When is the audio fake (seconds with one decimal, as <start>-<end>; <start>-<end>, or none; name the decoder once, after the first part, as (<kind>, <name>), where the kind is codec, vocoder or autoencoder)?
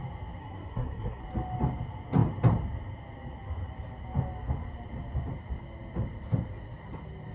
0.4-1.2 (codec, SNAC)